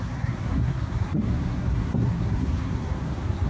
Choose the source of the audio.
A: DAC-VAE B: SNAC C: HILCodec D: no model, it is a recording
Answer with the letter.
B